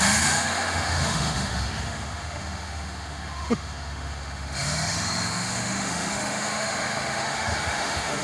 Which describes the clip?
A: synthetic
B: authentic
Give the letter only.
A